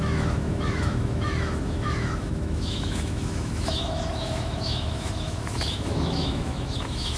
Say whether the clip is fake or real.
fake